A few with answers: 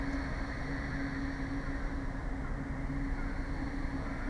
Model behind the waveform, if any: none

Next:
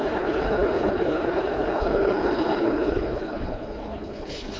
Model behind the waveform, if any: codec, HILCodec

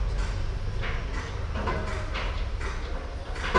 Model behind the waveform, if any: none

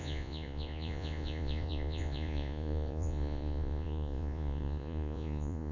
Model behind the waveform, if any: vocoder, Vocos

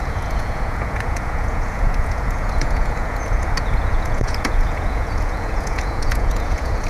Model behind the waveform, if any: vocoder, Vocos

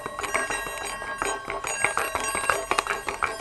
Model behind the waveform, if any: none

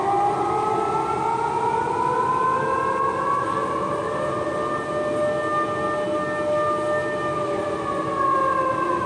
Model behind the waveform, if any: none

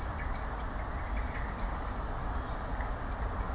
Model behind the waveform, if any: none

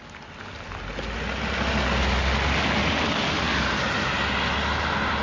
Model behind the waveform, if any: none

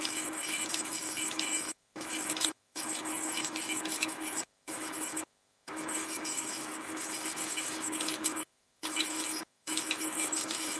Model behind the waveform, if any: autoencoder, DAC-VAE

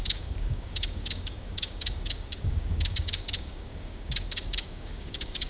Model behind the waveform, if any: codec, DAC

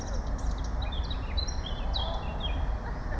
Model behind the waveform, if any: none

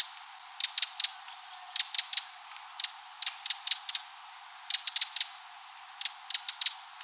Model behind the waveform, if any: none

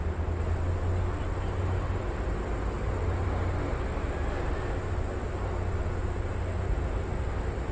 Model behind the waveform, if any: none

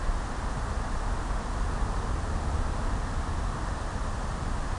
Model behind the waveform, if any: none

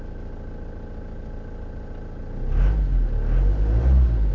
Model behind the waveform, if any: none